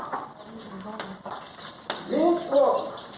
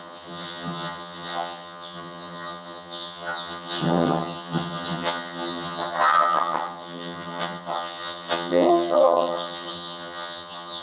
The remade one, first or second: second